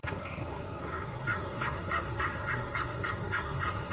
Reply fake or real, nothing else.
fake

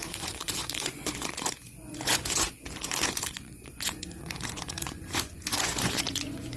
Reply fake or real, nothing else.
fake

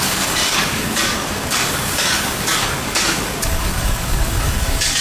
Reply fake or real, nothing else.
fake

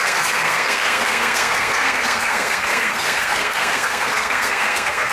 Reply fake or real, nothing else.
fake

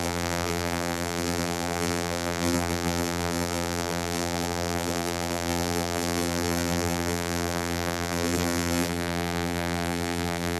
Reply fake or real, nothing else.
fake